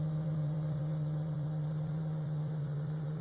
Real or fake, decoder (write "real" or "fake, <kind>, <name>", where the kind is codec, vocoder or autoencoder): fake, vocoder, WaveNeXt